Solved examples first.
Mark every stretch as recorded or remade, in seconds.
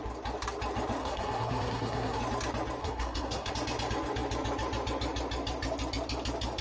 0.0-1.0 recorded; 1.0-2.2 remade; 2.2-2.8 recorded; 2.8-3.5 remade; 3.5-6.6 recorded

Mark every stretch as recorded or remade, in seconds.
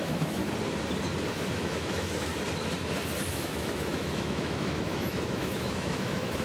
0.0-0.4 remade; 0.4-1.5 recorded; 1.5-2.3 remade; 2.3-3.3 recorded; 3.3-6.4 remade